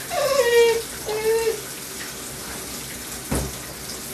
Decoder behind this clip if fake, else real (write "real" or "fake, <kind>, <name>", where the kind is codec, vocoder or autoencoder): real